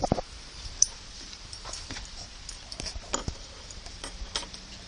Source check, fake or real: fake